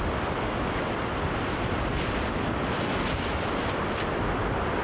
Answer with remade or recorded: recorded